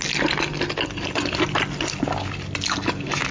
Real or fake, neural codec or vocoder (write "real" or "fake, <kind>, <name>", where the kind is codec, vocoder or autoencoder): real